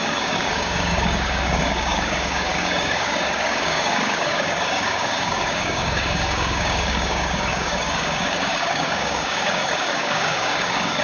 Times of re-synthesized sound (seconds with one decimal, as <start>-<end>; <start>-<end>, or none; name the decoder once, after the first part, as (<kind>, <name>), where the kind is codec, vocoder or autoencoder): 0.0-11.0 (codec, DAC)